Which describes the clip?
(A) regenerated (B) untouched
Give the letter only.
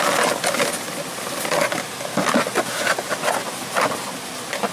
B